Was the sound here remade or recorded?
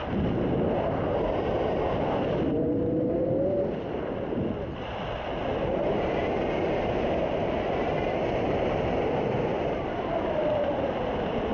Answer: recorded